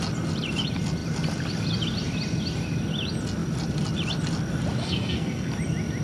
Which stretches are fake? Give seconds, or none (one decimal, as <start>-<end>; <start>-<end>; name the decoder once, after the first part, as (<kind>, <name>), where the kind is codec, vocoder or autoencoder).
4.8-5.5 (codec, SNAC)